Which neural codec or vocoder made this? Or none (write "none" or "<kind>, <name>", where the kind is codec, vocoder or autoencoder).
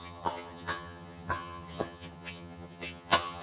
vocoder, HiFi-GAN